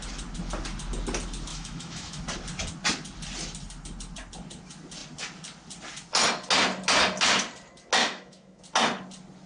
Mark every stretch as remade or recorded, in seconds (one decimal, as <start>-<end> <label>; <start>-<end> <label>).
0.0-1.5 recorded; 1.5-2.2 remade; 2.2-8.0 recorded; 8.0-8.6 remade; 8.6-9.5 recorded